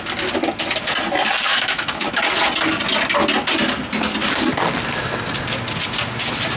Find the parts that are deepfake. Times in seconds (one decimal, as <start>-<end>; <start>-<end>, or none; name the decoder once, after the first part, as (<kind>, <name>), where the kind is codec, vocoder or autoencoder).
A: 1.5-2.2 (autoencoder, DAC-VAE)